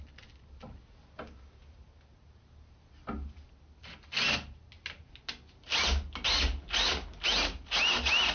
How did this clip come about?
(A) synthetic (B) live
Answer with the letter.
B